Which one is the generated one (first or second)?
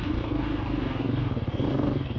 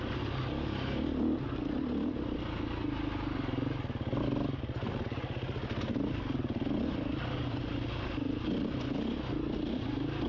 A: first